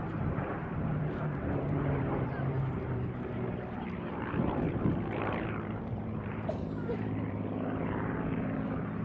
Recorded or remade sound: remade